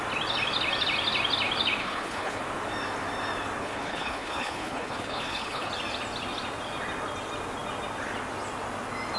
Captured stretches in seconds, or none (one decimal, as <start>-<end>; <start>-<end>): 0.0-1.8; 2.4-3.6; 5.7-9.2